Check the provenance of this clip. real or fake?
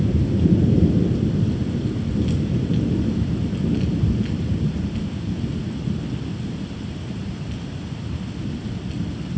real